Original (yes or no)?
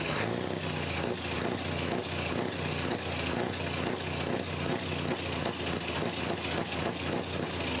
yes